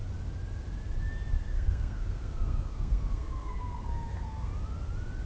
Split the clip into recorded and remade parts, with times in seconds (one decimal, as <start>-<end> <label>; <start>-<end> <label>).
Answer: 0.0-1.4 recorded; 1.4-4.5 remade; 4.5-5.3 recorded